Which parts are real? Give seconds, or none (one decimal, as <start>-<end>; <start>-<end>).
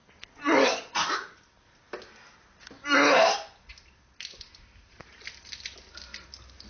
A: 0.0-6.7